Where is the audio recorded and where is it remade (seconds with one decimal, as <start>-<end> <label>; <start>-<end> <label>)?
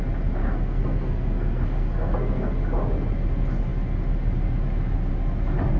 0.0-0.4 recorded; 0.4-2.5 remade; 2.5-5.8 recorded